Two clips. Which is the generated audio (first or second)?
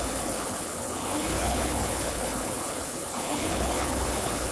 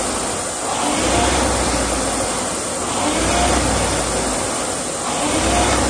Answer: first